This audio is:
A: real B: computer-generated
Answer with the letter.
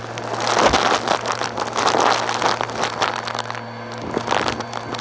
A